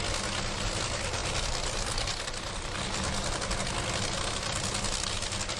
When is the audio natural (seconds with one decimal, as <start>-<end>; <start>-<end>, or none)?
0.0-5.6